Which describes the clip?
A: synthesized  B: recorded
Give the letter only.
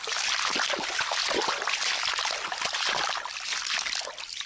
B